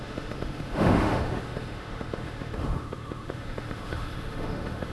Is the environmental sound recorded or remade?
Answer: remade